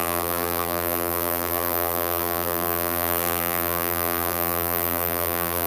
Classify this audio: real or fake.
fake